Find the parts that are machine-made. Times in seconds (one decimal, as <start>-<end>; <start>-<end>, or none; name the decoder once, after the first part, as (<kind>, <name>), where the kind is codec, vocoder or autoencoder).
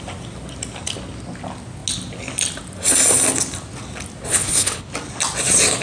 4.3-4.9 (codec, HILCodec)